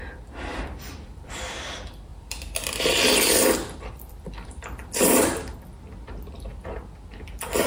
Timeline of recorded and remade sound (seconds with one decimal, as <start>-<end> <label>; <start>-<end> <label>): 0.0-0.5 recorded; 0.5-1.3 remade; 1.3-2.1 recorded; 2.1-5.6 remade; 5.6-7.7 recorded

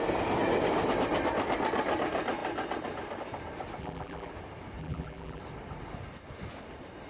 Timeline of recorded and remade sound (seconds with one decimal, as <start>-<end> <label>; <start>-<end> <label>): 0.0-3.8 recorded; 3.8-4.3 remade; 4.3-4.8 recorded; 4.8-5.4 remade; 5.4-7.1 recorded